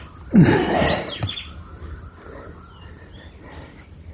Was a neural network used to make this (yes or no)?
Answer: no